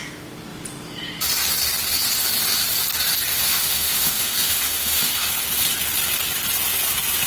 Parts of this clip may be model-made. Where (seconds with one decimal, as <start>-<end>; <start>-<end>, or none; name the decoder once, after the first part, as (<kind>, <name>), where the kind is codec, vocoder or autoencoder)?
3.3-5.3 (autoencoder, DAC-VAE)